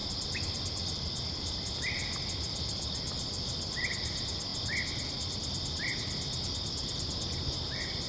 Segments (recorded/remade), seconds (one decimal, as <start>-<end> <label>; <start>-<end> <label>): 0.0-8.1 recorded